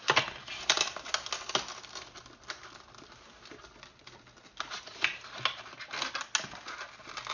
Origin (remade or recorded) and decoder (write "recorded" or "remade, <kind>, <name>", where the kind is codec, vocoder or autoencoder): recorded